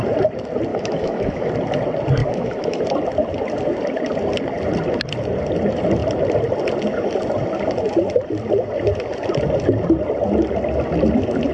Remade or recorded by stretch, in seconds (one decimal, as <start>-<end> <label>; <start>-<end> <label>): 0.0-0.7 recorded; 0.7-1.5 remade; 1.5-2.2 recorded; 2.2-2.8 remade; 2.8-11.5 recorded